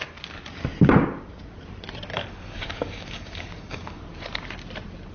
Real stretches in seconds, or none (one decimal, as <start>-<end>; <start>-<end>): 0.0-2.1; 4.0-5.1